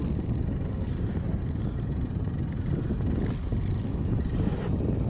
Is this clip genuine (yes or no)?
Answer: yes